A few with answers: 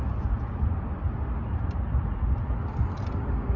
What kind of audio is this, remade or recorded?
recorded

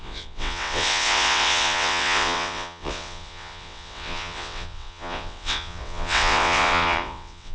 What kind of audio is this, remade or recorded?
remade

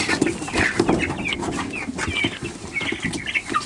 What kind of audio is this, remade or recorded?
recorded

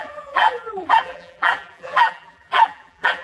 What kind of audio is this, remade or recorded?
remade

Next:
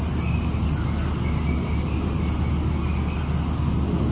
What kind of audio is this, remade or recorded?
recorded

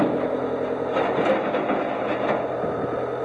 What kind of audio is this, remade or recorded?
recorded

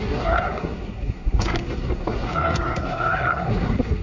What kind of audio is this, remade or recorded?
remade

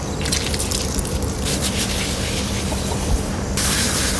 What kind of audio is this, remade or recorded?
recorded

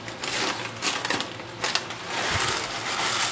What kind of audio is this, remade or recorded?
recorded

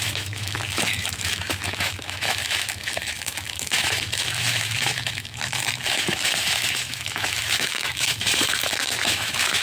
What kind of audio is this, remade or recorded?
remade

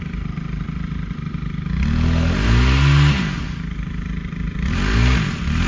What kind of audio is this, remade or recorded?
recorded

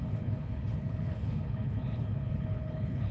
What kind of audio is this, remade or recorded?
remade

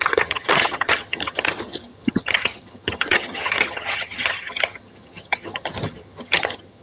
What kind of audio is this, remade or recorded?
remade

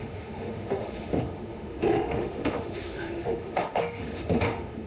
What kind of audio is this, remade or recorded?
remade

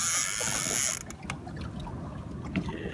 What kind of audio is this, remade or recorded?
recorded